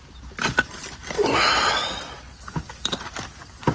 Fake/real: real